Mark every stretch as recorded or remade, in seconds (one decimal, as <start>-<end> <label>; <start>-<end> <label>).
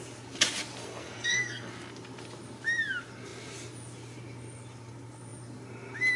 0.0-0.8 recorded; 0.8-1.7 remade; 1.7-6.2 recorded